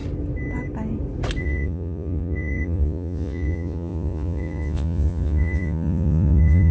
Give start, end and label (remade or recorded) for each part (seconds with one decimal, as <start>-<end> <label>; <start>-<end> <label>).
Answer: 0.0-1.4 recorded; 1.4-6.7 remade